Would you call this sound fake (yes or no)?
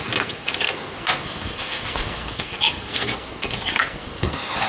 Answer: yes